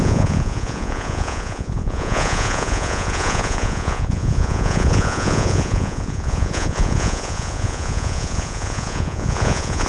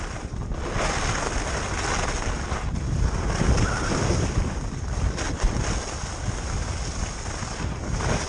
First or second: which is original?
second